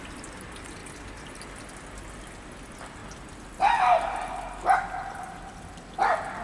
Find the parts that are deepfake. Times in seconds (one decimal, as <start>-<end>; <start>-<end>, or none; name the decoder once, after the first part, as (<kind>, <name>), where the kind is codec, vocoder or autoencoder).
none